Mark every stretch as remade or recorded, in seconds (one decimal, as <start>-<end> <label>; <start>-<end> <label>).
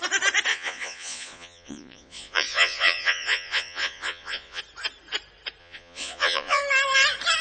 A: 0.0-0.5 recorded; 0.5-4.6 remade; 4.6-5.6 recorded; 5.6-6.6 remade; 6.6-7.4 recorded